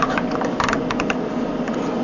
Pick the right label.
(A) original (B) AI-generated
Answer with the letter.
A